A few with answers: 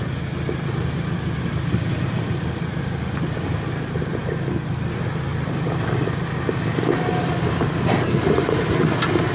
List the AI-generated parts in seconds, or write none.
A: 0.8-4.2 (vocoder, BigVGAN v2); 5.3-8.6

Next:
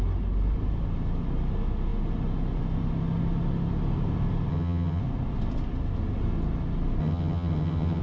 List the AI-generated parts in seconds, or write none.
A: 4.5-5.0 (vocoder, HiFi-GAN); 7.0-8.0

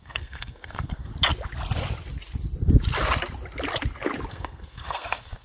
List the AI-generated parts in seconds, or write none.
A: 0.0-1.1 (codec, SNAC); 4.3-5.4

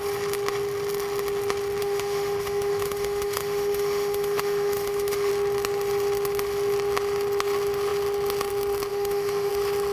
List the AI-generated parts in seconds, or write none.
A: 1.8-5.3 (autoencoder, DAC-VAE); 8.9-9.5

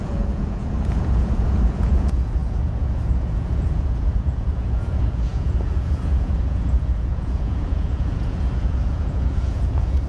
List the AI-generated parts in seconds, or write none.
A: 0.0-10.1 (vocoder, Vocos)